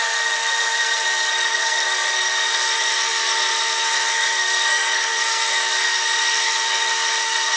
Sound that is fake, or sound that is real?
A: fake